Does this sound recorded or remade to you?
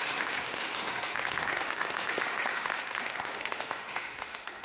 remade